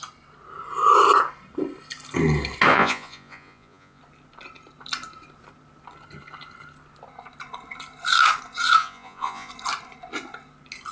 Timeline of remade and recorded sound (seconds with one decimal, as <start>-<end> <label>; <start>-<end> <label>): 0.0-2.7 recorded; 2.7-4.0 remade; 4.0-8.8 recorded; 8.8-9.5 remade; 9.5-10.9 recorded